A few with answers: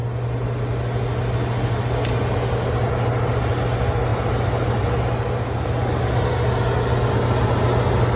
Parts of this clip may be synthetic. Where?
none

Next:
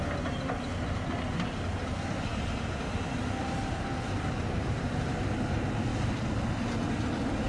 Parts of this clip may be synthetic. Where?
none

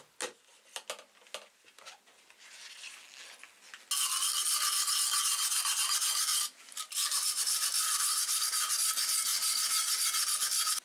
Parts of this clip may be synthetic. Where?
6.3-8.7 (vocoder, BigVGAN v2); 9.3-9.9

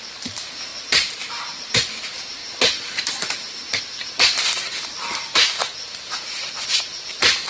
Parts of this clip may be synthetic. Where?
0.0-7.5 (vocoder, BigVGAN v2)

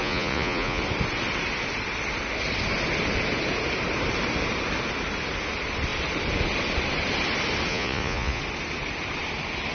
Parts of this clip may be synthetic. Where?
0.0-0.8 (vocoder, Vocos); 7.7-8.4